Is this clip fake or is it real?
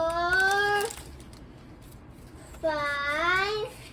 real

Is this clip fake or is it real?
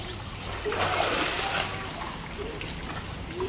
real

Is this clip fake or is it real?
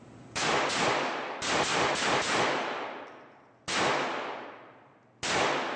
real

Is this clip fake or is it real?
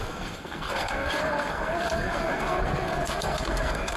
fake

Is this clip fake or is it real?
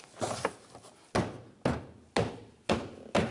real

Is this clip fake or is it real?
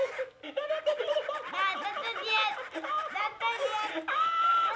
real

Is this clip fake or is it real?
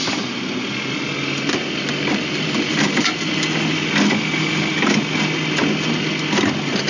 real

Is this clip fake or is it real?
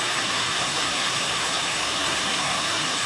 fake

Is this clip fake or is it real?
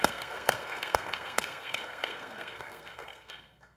fake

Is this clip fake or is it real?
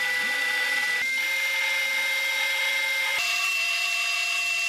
real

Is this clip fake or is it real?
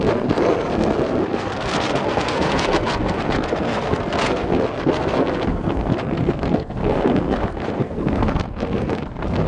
fake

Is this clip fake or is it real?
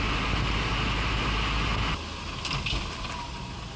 real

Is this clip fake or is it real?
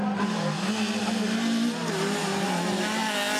real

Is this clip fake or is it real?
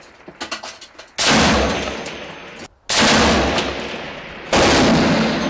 real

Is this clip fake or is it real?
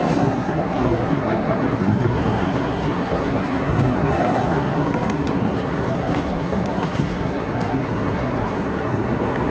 fake